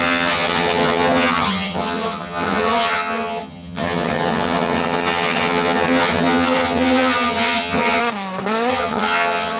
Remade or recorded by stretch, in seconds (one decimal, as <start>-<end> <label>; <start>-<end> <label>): 0.0-8.0 remade; 8.0-8.7 recorded; 8.7-9.6 remade